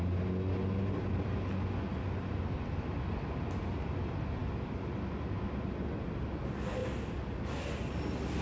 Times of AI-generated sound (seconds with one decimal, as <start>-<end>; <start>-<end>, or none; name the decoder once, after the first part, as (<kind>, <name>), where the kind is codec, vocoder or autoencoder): none